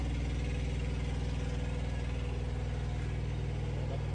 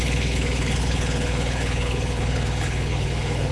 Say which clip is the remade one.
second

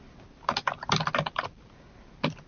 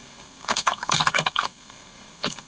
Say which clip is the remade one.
second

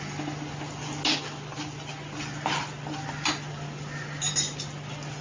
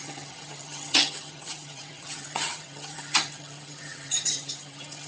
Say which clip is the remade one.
second